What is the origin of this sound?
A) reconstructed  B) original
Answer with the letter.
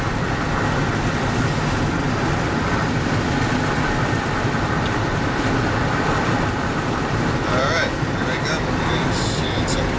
A